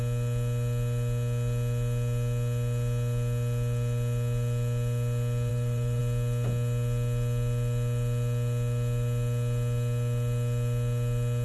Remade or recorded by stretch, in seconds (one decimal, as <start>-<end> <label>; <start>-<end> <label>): 0.0-5.5 recorded; 5.5-6.0 remade; 6.0-11.4 recorded